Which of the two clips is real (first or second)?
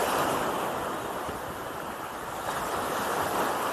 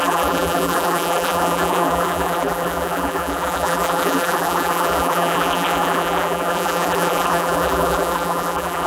first